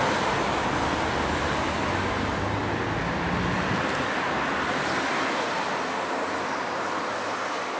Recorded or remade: recorded